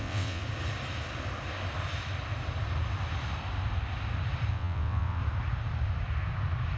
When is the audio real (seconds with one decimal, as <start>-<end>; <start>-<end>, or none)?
0.4-4.5; 5.2-6.8